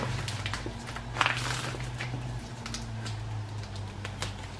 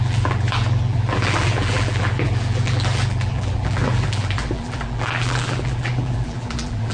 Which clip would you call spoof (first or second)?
second